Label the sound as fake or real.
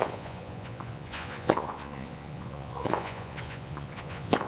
fake